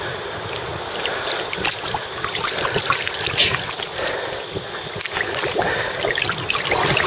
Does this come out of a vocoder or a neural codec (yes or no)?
no